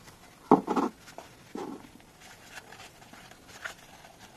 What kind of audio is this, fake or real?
real